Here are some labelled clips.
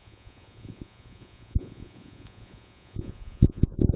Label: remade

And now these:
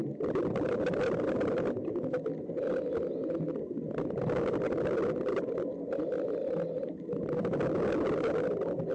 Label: recorded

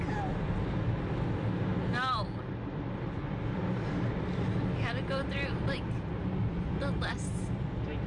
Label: recorded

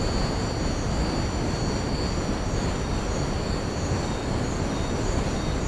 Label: recorded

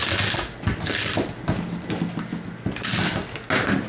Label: recorded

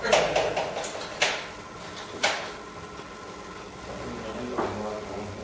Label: recorded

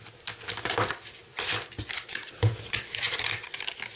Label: recorded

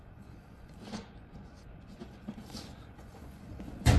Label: remade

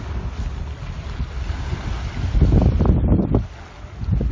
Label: recorded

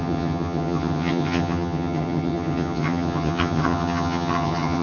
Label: remade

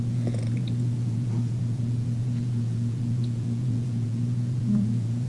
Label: remade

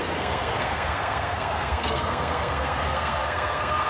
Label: remade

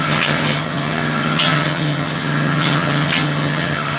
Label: remade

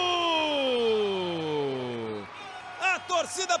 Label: recorded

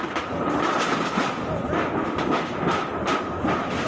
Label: remade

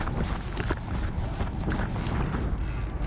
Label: recorded